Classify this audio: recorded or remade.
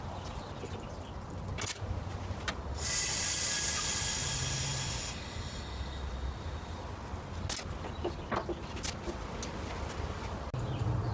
recorded